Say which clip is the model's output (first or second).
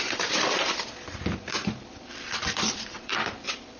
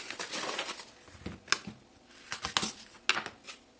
first